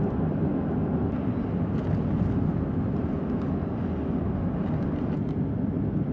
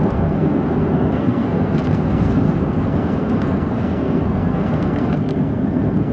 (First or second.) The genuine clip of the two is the first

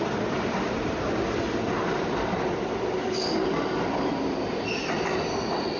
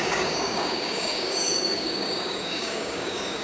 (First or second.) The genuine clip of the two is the first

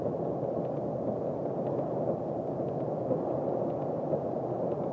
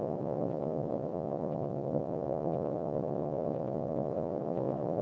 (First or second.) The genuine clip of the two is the first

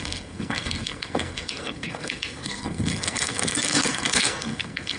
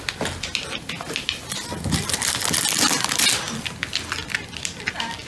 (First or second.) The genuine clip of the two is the second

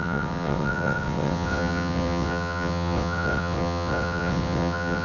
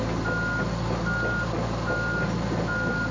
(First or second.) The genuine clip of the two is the second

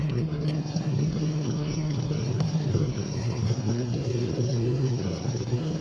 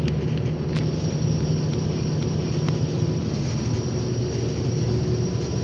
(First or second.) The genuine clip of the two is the second